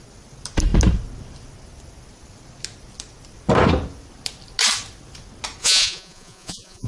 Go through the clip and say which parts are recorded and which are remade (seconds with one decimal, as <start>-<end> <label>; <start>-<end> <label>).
0.0-5.6 recorded; 5.6-6.9 remade